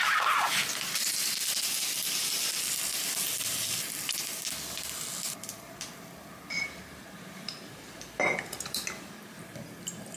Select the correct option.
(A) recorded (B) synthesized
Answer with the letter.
A